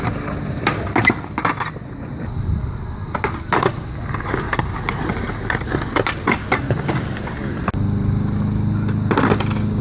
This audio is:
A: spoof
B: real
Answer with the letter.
B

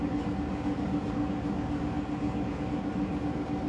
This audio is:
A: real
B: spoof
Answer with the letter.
B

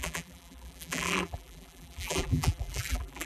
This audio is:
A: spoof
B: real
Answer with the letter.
A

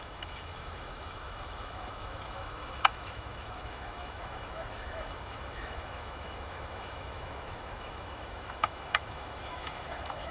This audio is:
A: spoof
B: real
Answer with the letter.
A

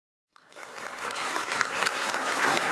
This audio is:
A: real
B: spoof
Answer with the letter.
B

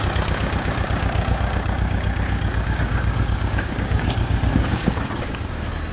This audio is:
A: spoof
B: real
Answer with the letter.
A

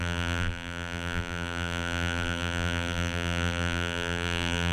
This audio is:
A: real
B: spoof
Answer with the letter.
B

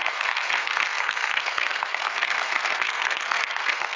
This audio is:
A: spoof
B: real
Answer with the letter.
A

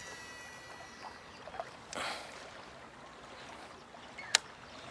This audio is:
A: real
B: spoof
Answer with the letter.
A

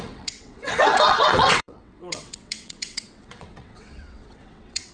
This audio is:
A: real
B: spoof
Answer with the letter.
B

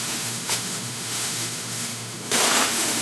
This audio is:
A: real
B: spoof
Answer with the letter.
B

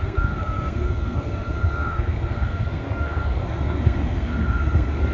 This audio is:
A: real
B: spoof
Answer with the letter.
B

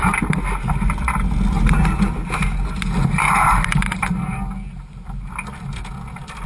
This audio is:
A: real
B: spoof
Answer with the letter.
A